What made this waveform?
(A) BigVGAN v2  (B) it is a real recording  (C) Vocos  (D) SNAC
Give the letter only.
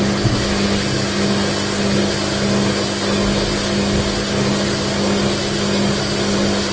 B